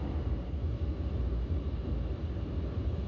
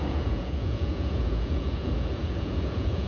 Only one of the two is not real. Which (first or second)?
second